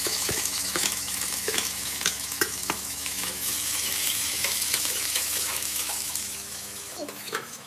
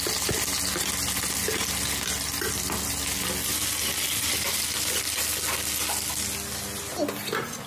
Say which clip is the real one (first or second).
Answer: second